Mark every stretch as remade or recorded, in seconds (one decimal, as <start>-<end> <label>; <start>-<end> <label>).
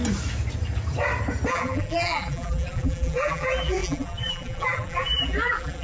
0.0-1.5 recorded; 1.5-5.8 remade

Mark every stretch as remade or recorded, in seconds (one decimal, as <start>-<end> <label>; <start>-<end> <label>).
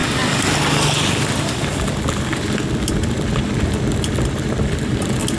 0.0-5.4 recorded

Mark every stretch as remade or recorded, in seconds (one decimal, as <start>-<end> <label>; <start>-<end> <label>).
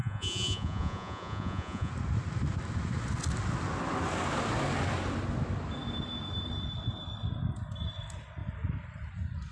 0.0-1.9 remade; 1.9-9.5 recorded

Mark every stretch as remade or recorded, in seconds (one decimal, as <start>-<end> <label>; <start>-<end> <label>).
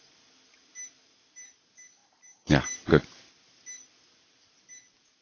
0.0-2.0 recorded; 2.0-3.2 remade; 3.2-5.2 recorded